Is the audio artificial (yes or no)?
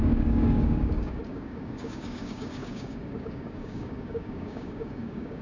yes